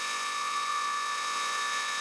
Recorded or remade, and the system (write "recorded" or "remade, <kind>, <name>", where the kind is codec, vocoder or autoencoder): remade, vocoder, Vocos